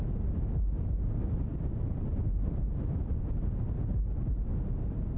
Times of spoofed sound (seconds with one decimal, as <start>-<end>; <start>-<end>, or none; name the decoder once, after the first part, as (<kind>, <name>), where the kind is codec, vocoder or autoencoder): 1.5-2.8 (vocoder, BigVGAN v2); 4.5-5.2